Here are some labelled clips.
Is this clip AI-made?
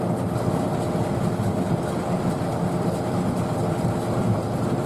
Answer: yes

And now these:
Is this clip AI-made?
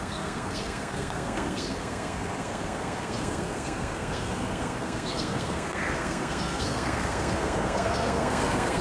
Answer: yes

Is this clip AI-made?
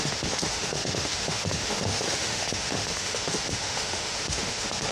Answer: yes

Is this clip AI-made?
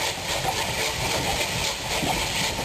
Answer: no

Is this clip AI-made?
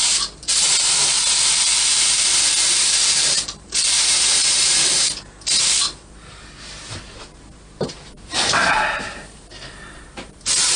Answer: yes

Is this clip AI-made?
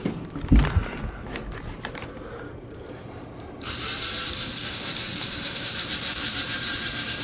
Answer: yes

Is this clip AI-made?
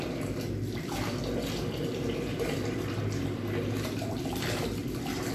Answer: no